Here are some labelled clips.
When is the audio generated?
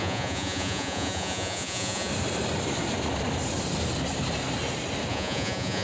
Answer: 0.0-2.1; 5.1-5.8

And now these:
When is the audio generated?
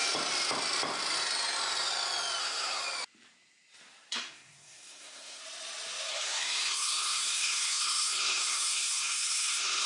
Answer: 2.4-2.8; 4.1-5.4; 6.1-9.9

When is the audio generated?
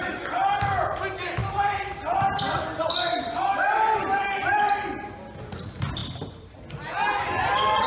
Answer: 0.0-7.9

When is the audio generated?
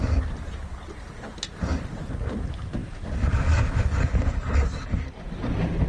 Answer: 2.8-4.5